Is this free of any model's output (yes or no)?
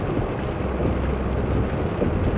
yes